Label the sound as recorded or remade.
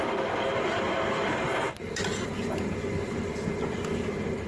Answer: recorded